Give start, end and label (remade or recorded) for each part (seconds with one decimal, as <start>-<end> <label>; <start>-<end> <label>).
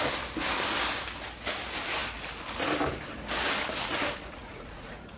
0.0-4.4 recorded; 4.4-5.2 remade